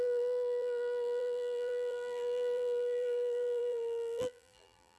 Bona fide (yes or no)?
no